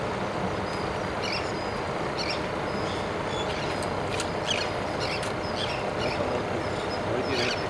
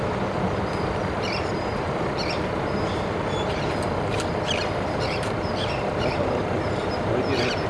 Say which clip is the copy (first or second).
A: second